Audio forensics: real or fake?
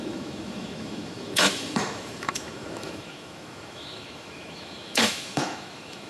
fake